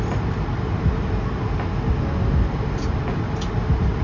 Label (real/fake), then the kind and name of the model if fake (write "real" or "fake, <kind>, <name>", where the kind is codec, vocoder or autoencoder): real